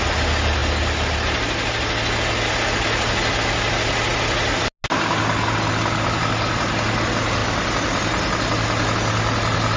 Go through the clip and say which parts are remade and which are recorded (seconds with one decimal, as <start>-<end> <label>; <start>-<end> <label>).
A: 0.0-9.8 recorded